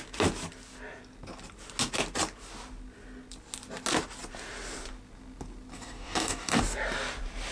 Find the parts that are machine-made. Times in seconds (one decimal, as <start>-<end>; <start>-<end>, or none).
5.7-6.6